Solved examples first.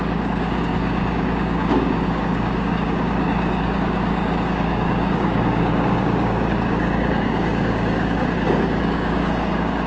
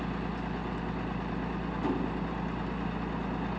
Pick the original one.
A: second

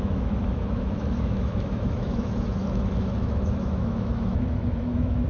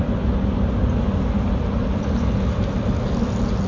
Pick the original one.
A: second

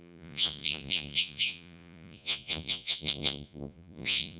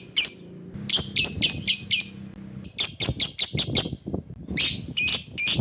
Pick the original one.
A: second